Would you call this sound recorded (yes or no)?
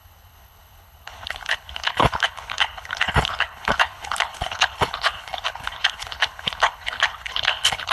no